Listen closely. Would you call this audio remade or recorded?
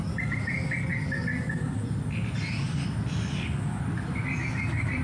recorded